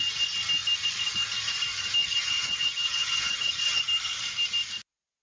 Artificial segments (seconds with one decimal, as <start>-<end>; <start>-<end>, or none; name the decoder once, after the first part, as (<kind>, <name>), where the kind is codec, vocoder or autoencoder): 2.0-3.8 (vocoder, HiFi-GAN)